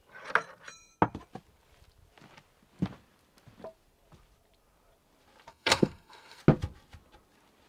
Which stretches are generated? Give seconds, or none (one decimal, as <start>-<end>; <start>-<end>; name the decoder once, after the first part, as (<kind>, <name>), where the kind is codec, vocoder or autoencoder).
5.5-6.4 (codec, SNAC)